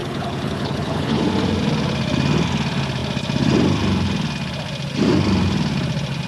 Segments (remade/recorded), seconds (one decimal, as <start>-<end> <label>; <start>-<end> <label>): 0.0-1.2 remade; 1.2-6.3 recorded